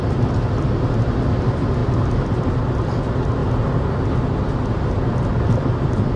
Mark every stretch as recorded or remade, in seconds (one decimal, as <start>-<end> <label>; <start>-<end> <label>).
0.0-1.8 recorded; 1.8-2.5 remade; 2.5-6.2 recorded